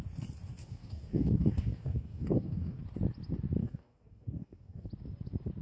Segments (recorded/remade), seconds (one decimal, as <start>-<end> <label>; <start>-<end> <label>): 0.0-0.6 recorded; 0.6-2.8 remade; 2.8-3.6 recorded; 3.6-4.9 remade; 4.9-5.6 recorded